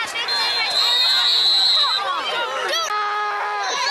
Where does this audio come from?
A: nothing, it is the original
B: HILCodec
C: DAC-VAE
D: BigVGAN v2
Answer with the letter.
A